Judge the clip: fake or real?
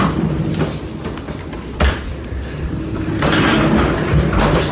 real